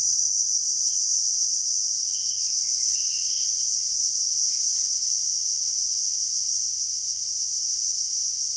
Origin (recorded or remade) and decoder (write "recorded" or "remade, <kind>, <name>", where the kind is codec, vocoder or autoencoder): remade, codec, ZipCodec